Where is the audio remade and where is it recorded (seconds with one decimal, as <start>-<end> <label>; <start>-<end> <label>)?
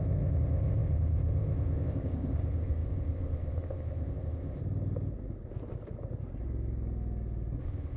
0.0-4.6 remade; 4.6-7.6 recorded; 7.6-8.0 remade